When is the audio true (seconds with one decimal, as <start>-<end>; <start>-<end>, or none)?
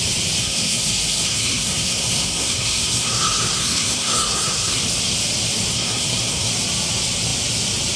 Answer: 0.0-0.4; 4.8-5.7; 6.5-8.0